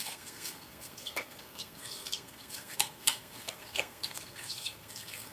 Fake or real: fake